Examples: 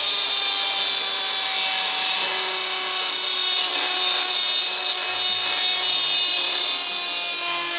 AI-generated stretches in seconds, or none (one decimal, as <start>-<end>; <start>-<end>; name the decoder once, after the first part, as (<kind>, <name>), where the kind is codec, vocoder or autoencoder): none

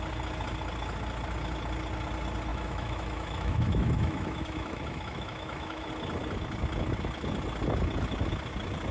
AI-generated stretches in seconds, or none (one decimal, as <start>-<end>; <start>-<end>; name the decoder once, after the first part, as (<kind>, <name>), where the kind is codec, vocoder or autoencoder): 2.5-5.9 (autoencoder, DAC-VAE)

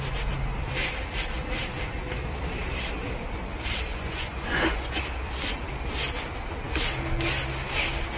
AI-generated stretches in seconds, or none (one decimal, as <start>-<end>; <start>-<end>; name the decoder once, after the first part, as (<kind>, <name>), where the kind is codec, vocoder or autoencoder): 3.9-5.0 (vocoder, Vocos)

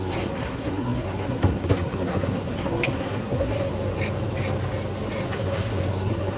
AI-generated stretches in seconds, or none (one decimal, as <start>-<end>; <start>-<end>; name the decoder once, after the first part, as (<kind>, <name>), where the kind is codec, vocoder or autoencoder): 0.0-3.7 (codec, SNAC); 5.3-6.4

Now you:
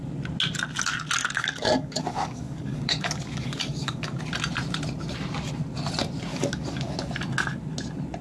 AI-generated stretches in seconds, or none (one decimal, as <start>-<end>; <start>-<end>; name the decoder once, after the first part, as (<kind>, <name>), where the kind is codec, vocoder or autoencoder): 1.2-4.2 (codec, DAC); 6.3-6.9

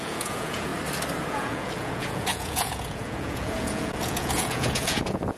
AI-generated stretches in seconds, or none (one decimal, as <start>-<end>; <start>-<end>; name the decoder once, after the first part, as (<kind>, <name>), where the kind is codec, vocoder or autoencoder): 0.0-0.7 (vocoder, Vocos); 1.3-5.4

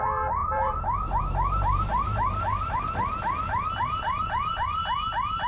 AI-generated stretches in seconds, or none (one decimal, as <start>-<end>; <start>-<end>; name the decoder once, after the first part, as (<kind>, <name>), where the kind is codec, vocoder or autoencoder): 0.0-2.9 (vocoder, BigVGAN v2); 3.8-4.8

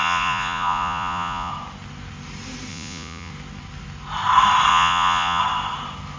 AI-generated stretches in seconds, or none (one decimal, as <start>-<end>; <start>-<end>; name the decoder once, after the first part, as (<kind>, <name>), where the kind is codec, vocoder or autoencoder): 0.0-1.5 (vocoder, Vocos); 2.7-3.3; 4.7-5.4